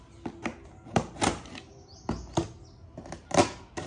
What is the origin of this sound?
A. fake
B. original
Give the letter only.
B